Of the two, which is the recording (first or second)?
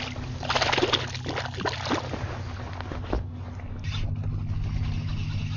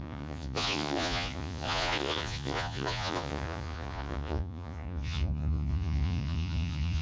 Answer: first